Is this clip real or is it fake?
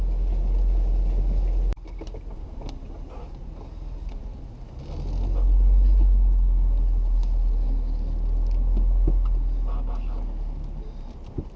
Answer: real